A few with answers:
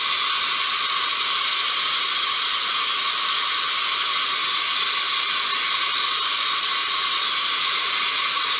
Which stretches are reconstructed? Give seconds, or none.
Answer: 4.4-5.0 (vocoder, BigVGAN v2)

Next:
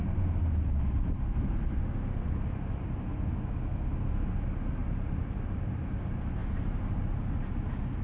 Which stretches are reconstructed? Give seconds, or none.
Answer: 4.8-5.7 (vocoder, BigVGAN v2); 6.4-7.5